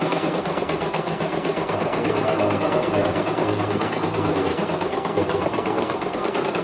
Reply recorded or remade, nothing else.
remade